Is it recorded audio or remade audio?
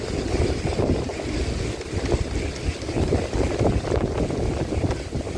recorded